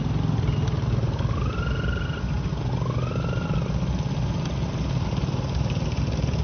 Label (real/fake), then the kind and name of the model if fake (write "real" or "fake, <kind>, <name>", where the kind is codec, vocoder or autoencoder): real